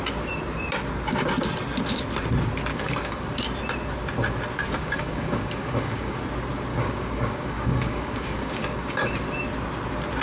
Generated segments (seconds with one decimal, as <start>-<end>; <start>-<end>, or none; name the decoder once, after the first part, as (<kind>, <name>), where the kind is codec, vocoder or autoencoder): 2.7-3.2 (codec, DAC); 4.8-6.2; 6.7-9.1